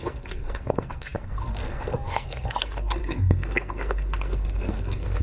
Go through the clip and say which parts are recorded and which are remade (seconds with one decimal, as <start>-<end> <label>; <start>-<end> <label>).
0.0-5.2 remade